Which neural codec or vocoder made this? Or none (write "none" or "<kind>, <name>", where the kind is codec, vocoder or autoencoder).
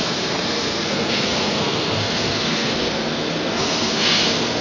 codec, SNAC